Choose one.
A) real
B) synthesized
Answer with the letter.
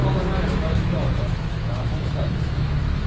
B